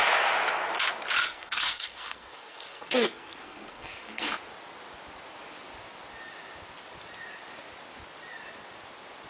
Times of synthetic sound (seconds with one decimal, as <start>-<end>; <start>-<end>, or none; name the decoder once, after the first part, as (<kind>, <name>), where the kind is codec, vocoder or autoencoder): 1.3-4.3 (codec, SNAC)